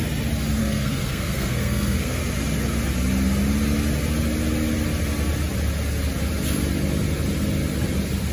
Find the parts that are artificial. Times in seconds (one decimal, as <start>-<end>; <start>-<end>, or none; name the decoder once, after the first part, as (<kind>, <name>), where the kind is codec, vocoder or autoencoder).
0.6-2.2 (codec, SNAC)